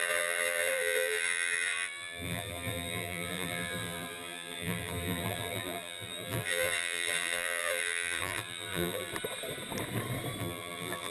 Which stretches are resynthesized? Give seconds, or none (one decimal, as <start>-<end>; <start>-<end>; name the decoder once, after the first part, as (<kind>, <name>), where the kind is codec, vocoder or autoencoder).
0.0-9.1 (vocoder, BigVGAN v2); 10.4-11.1